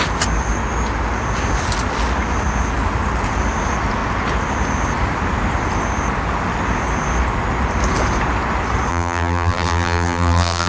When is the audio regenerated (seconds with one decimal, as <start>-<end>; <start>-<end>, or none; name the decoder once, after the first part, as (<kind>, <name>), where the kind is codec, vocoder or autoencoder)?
8.9-10.7 (vocoder, BigVGAN v2)